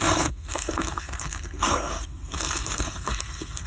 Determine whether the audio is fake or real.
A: fake